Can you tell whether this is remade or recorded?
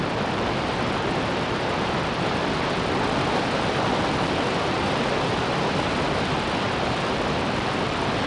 recorded